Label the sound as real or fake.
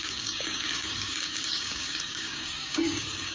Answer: fake